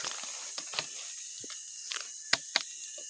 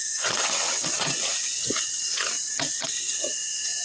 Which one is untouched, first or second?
first